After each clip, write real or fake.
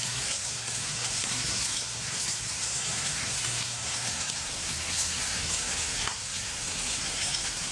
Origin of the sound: fake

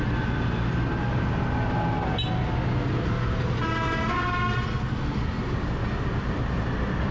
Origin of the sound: real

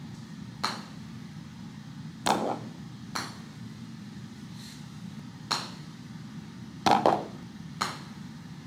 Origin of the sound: real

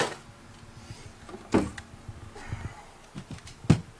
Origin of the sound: real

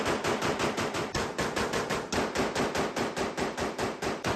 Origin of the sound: real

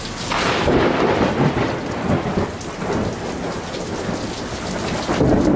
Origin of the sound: real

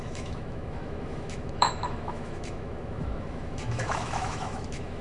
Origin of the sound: fake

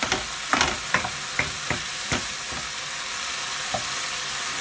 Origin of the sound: real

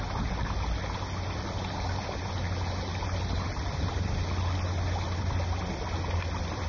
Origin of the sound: real